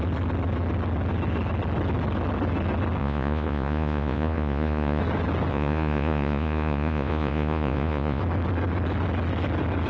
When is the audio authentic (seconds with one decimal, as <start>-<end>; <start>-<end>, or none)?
0.0-3.0; 5.0-5.5; 8.2-9.9